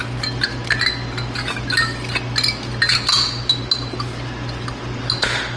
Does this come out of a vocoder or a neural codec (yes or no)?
no